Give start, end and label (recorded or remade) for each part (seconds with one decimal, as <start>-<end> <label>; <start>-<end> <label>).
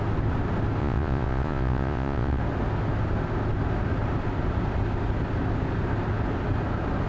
0.0-0.8 recorded; 0.8-2.4 remade; 2.4-7.1 recorded